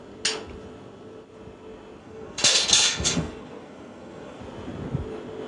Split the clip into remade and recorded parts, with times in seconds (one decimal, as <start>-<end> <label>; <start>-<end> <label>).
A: 0.0-2.0 recorded; 2.0-4.4 remade; 4.4-5.5 recorded